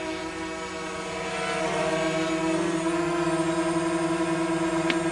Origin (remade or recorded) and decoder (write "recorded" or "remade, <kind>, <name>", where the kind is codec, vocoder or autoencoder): recorded